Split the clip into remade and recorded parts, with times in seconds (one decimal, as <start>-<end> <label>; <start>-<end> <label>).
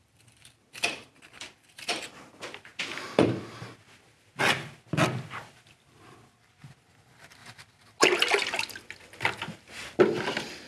0.0-2.7 remade; 2.7-5.9 recorded; 5.9-7.4 remade; 7.4-10.0 recorded; 10.0-10.7 remade